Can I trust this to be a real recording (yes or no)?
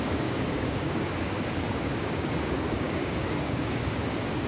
no